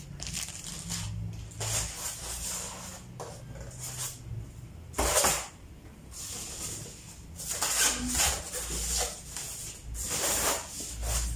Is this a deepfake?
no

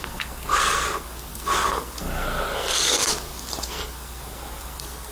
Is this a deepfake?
yes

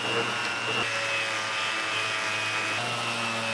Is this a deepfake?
no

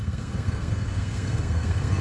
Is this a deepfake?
yes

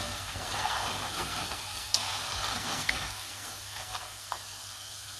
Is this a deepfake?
yes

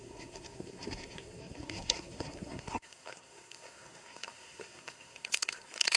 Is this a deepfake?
yes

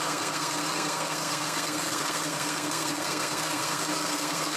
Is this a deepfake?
yes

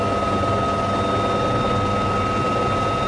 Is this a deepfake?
no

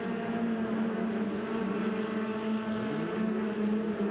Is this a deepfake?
no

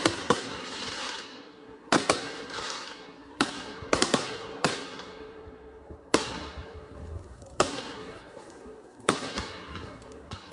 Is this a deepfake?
yes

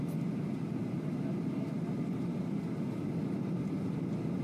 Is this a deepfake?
no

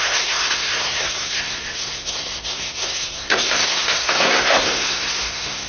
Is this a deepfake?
yes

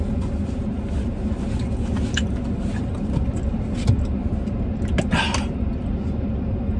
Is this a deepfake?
no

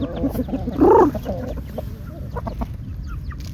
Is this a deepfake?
no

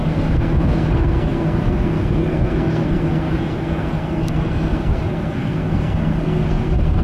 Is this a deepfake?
yes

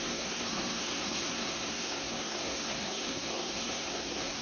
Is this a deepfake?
yes